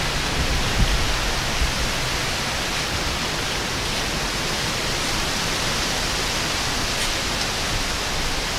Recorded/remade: recorded